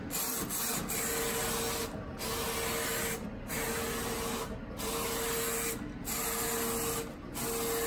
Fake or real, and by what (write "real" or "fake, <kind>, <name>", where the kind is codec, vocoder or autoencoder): real